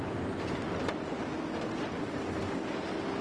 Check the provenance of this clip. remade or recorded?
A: recorded